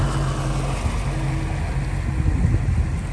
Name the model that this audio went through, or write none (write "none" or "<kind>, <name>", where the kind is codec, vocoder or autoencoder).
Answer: none